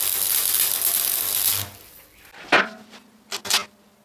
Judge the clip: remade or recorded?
recorded